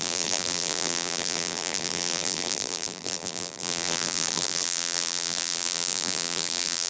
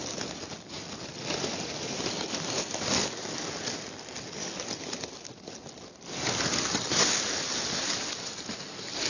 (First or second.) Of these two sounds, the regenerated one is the first